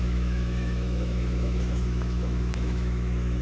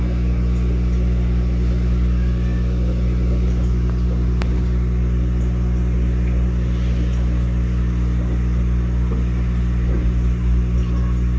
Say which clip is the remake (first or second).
first